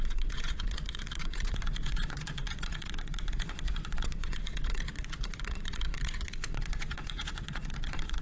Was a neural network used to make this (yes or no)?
yes